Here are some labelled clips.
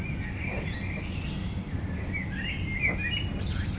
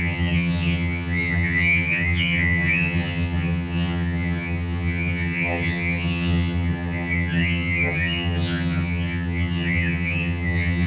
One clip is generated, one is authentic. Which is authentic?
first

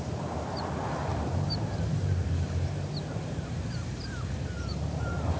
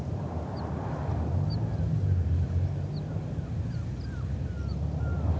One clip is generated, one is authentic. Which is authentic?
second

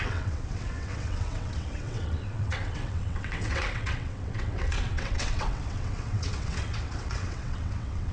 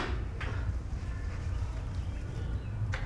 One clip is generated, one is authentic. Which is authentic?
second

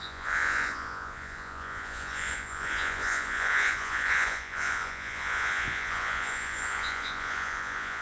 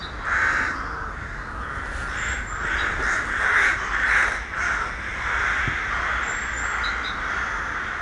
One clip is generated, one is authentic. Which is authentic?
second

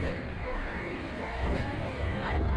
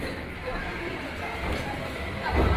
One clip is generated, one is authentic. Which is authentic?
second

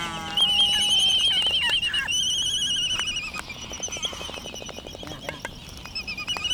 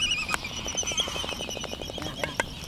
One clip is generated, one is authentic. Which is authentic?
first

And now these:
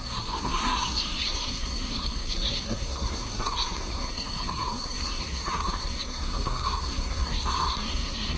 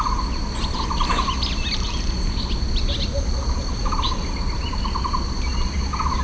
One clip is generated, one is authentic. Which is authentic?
second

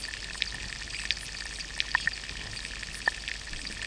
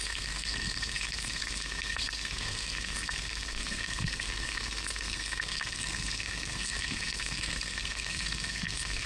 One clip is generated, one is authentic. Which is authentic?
first